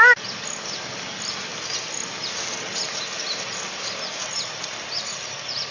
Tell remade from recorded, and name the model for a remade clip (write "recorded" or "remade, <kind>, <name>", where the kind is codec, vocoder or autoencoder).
recorded